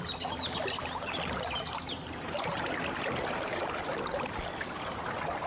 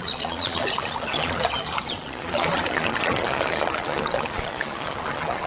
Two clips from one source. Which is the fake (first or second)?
second